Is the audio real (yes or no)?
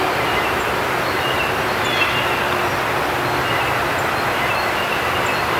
yes